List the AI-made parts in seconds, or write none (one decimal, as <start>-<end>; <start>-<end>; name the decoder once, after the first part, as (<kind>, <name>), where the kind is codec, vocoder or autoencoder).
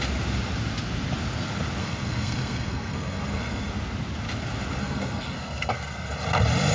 1.8-3.7 (codec, SNAC); 4.8-6.1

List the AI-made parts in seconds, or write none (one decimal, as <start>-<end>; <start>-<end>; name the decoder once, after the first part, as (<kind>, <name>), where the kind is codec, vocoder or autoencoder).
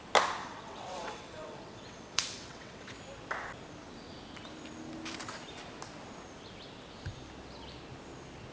0.4-3.0 (vocoder, WaveNeXt)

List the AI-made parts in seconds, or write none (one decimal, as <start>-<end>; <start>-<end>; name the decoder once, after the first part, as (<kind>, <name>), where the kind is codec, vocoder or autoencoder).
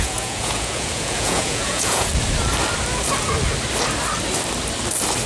0.0-2.1 (vocoder, Vocos)